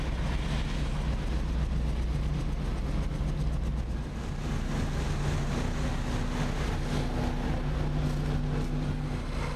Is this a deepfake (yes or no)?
no